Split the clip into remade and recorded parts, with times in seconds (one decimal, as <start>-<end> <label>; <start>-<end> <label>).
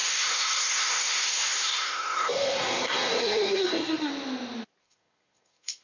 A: 0.0-4.1 remade; 4.1-4.8 recorded; 4.8-5.8 remade